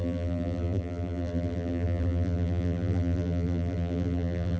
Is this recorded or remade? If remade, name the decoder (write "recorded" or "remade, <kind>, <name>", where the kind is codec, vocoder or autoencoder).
remade, vocoder, BigVGAN v2